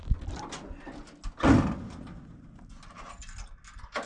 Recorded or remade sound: recorded